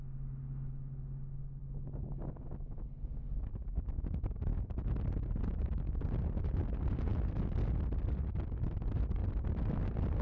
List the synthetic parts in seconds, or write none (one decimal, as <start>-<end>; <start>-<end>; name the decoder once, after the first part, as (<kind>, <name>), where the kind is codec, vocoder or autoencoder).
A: none